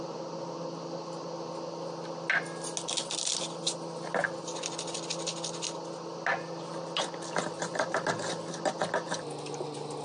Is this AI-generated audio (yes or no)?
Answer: no